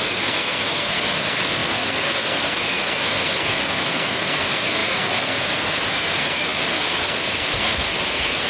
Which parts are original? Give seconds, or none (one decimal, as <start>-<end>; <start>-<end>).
none